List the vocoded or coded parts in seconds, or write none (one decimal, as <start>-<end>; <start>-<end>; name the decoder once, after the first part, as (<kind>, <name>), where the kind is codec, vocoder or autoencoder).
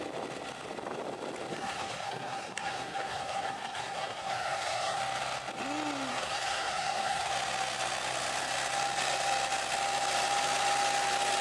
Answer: 1.5-5.0 (codec, SNAC); 6.1-7.3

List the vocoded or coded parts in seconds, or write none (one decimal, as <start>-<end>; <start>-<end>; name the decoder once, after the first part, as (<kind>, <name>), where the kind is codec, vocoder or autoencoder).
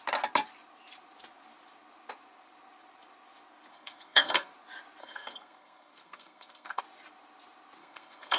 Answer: 3.7-4.5 (codec, SNAC); 5.0-6.8; 7.8-8.4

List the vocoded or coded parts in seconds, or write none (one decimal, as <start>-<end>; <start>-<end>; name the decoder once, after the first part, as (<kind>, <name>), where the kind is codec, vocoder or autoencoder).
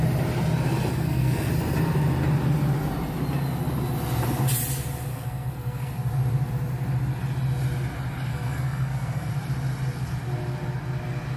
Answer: 0.9-1.5 (codec, SNAC); 5.1-5.9; 8.3-9.3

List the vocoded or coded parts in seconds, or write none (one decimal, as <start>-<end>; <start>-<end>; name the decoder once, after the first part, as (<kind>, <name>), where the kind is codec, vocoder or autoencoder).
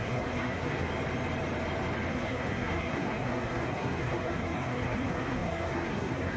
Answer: 0.0-0.9 (codec, SNAC); 2.1-6.4